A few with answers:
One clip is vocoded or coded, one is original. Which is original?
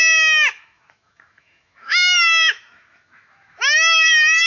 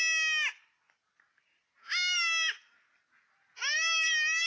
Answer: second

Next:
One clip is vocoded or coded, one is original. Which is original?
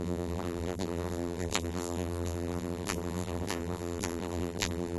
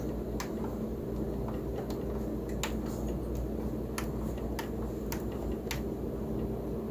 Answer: second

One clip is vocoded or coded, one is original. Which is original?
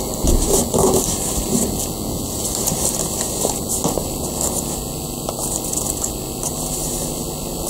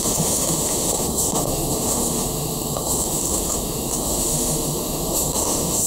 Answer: first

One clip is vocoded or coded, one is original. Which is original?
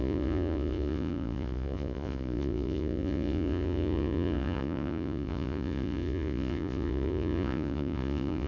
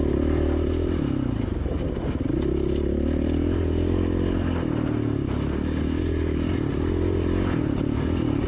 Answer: second